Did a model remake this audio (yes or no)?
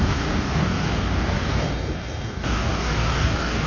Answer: yes